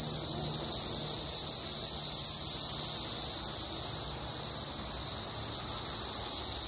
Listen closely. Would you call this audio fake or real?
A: real